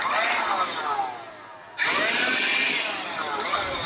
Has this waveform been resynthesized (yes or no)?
no